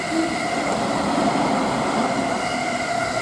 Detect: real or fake fake